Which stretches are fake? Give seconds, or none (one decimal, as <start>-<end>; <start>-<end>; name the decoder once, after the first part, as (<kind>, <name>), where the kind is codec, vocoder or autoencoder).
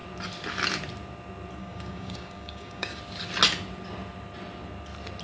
1.6-3.0 (codec, DAC)